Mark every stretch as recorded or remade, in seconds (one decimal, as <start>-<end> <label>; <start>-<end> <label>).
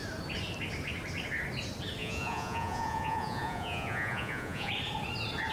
0.0-2.0 recorded; 2.0-4.7 remade; 4.7-5.5 recorded